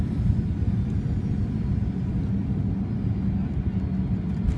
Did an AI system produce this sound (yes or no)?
no